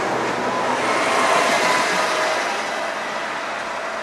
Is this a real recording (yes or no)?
yes